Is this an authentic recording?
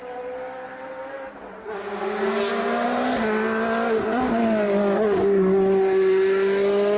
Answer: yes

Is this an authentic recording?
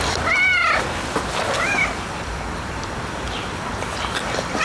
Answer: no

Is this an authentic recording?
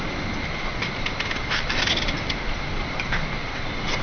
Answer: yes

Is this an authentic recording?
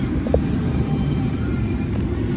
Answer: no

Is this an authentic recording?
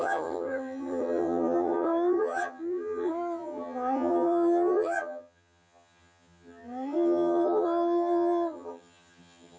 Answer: no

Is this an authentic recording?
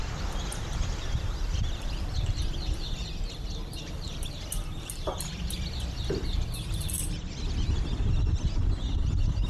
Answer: no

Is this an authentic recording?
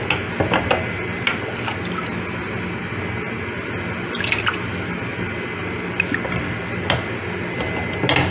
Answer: yes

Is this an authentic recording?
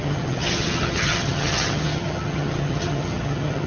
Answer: no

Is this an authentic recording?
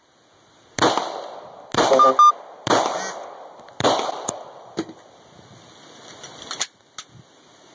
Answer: yes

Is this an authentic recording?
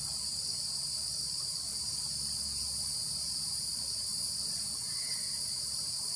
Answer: no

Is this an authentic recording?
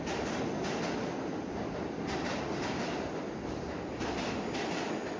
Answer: yes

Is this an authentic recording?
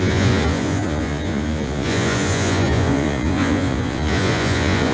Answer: no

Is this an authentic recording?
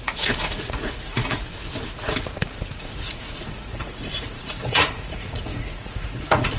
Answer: no